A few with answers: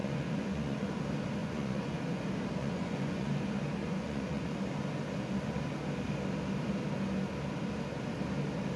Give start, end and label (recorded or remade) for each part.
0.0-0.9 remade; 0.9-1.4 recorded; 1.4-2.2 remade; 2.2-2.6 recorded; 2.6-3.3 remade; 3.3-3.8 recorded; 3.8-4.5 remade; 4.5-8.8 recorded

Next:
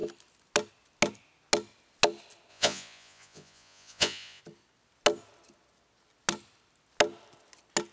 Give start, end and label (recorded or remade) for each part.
0.0-2.5 recorded; 2.5-4.4 remade; 4.4-7.9 recorded